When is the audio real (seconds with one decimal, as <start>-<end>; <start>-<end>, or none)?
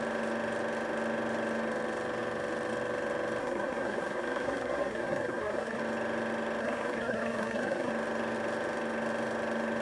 0.0-3.4; 5.8-6.6; 7.9-9.8